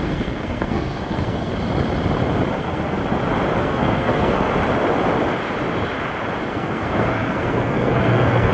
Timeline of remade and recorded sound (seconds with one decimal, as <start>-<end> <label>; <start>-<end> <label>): 0.0-1.5 remade; 1.5-2.5 recorded; 2.5-3.0 remade; 3.0-3.6 recorded; 3.6-4.5 remade; 4.5-6.5 recorded; 6.5-8.5 remade